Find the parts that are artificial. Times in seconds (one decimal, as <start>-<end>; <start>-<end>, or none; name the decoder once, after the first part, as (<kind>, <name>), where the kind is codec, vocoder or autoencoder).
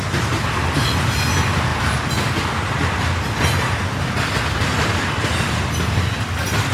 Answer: none